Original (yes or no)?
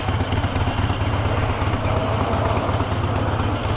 yes